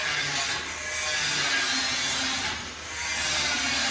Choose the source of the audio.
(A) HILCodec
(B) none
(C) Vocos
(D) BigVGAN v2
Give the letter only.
B